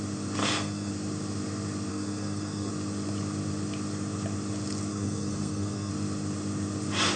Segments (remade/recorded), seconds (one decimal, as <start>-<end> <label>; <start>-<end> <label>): 0.0-0.4 recorded; 0.4-0.9 remade; 0.9-1.9 recorded; 1.9-2.7 remade; 2.7-4.9 recorded; 4.9-5.9 remade; 5.9-7.2 recorded

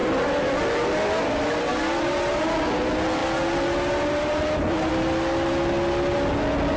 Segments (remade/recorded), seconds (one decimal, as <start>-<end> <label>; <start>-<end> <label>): 0.0-6.8 recorded

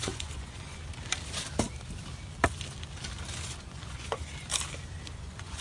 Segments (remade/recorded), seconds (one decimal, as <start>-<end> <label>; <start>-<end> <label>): 0.0-0.8 remade; 0.8-3.6 recorded; 3.6-4.3 remade; 4.3-5.1 recorded; 5.1-5.6 remade

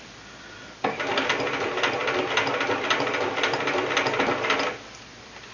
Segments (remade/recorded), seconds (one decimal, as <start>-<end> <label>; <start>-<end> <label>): 0.0-5.5 recorded